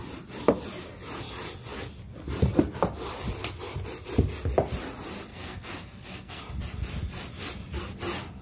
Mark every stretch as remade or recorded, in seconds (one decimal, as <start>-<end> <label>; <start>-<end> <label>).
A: 0.0-5.3 recorded; 5.3-6.4 remade; 6.4-8.4 recorded

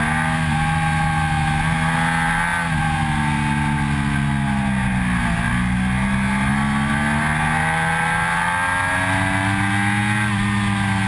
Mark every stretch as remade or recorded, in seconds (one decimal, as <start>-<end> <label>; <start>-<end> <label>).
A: 0.0-11.1 recorded